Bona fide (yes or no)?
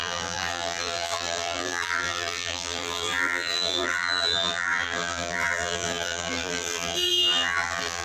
no